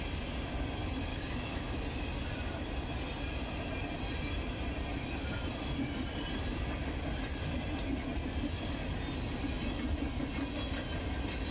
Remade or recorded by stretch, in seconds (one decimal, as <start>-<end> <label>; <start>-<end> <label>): 0.0-1.1 recorded; 1.1-1.8 remade; 1.8-11.5 recorded